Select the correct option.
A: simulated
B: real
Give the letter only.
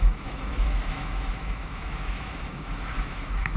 A